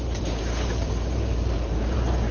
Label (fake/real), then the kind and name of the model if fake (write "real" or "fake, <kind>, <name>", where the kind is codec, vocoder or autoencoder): fake, vocoder, BigVGAN v2